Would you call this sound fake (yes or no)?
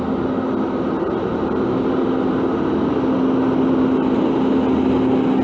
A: no